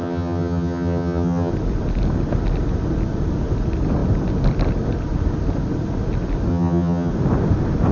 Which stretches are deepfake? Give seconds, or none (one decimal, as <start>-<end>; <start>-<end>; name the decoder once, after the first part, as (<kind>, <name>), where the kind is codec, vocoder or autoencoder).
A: 0.0-1.5 (vocoder, HiFi-GAN); 6.5-7.1